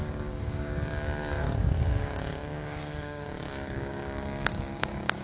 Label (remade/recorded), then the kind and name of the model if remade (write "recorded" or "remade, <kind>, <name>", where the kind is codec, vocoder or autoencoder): remade, codec, DAC